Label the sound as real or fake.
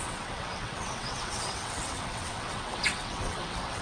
fake